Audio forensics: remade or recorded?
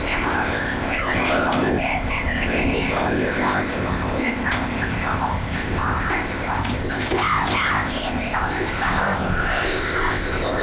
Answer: remade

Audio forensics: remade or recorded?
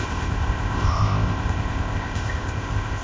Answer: remade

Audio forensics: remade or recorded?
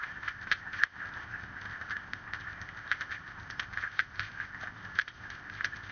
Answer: remade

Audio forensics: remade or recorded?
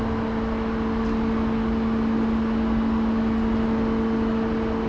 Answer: recorded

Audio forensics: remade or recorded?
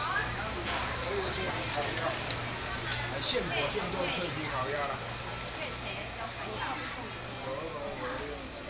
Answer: recorded